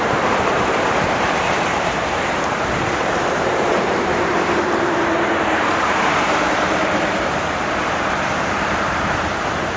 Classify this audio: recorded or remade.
remade